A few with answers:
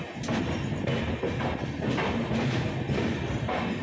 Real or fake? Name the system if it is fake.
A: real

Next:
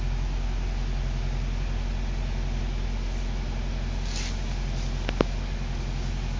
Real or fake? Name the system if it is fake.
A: real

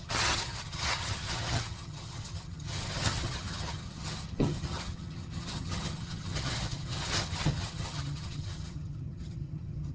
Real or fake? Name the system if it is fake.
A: fake, vocoder, HiFi-GAN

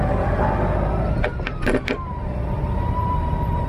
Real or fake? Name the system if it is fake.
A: real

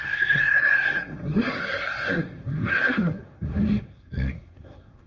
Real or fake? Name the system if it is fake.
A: fake, codec, SNAC